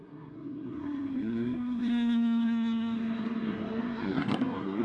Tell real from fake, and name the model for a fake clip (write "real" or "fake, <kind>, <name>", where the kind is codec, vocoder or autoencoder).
fake, codec, SNAC